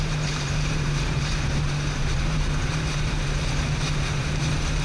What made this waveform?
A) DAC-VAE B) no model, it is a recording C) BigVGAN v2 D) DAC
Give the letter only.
C